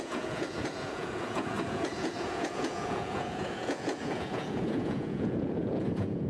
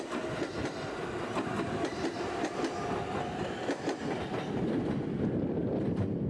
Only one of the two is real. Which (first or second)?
second